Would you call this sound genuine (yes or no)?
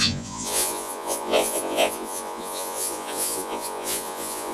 no